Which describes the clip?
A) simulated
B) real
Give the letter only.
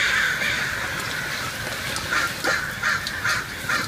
B